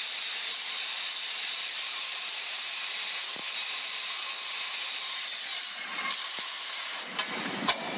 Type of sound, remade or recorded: remade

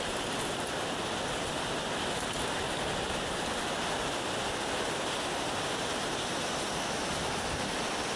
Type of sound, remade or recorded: recorded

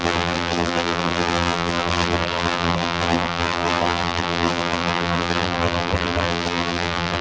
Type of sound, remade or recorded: remade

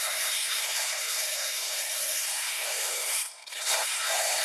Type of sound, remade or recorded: remade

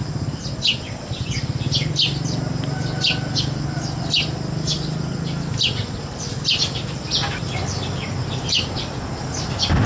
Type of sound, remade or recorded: recorded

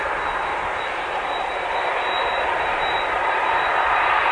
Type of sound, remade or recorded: remade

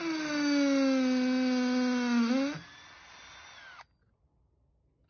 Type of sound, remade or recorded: recorded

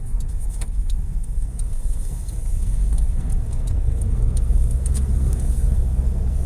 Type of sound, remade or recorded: remade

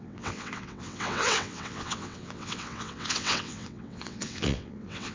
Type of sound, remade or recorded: remade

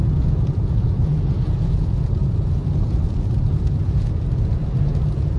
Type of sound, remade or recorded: remade